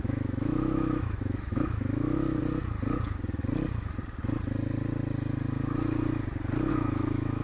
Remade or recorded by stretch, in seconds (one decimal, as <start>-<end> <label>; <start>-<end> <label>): 0.0-2.4 remade; 2.4-6.7 recorded; 6.7-7.4 remade